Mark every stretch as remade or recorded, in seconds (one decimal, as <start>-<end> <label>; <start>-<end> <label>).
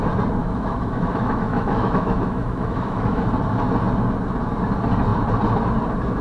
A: 0.0-0.4 recorded; 0.4-3.2 remade; 3.2-6.2 recorded